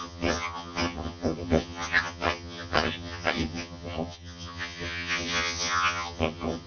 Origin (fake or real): fake